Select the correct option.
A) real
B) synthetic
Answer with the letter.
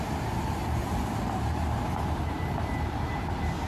B